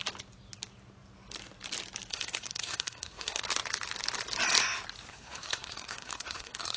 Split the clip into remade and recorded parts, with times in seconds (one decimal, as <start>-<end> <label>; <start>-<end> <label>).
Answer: 0.0-2.1 recorded; 2.1-3.4 remade; 3.4-5.1 recorded; 5.1-6.8 remade